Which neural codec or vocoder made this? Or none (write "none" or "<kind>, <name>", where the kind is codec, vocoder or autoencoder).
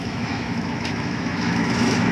autoencoder, DAC-VAE